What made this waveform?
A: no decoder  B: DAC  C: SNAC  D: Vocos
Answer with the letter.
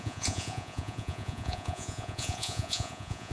D